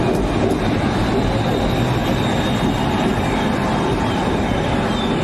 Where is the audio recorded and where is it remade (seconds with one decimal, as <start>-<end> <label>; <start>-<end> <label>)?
0.0-2.0 recorded; 2.0-2.6 remade; 2.6-5.2 recorded